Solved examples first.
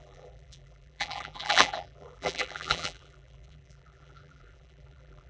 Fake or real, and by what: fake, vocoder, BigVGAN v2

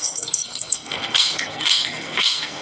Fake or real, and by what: fake, codec, SNAC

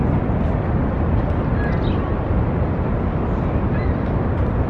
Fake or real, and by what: real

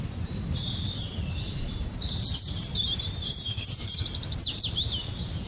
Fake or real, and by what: fake, vocoder, BigVGAN v2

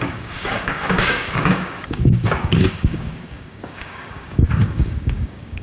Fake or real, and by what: fake, codec, DAC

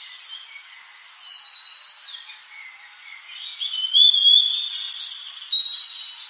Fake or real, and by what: real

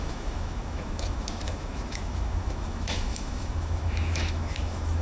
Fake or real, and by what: fake, autoencoder, DAC-VAE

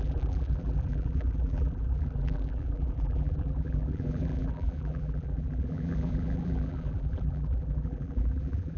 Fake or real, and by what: fake, vocoder, BigVGAN v2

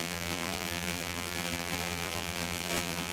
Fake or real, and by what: fake, vocoder, BigVGAN v2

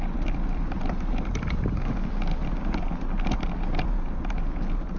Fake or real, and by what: real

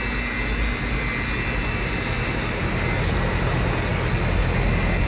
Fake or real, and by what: real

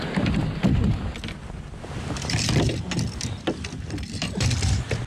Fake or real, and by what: real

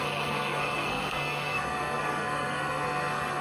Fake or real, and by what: fake, codec, SNAC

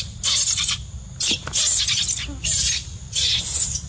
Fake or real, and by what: real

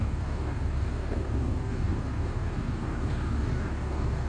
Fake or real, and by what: fake, codec, DAC